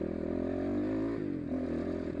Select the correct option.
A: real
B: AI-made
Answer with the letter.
A